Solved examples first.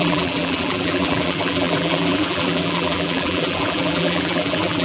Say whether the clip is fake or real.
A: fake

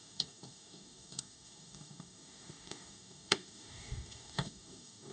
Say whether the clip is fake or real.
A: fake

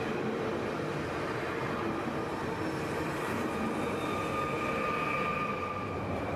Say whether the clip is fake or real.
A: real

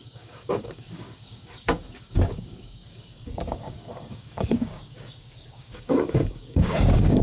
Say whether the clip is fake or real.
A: fake